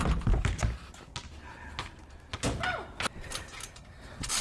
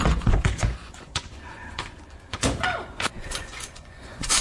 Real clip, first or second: first